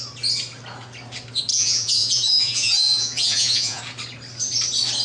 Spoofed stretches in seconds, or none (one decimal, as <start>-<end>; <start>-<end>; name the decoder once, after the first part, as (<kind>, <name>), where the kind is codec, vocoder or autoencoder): 1.5-3.8 (vocoder, Vocos)